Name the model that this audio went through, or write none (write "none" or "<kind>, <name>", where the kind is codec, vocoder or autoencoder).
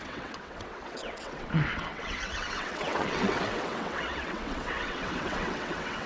vocoder, WaveNeXt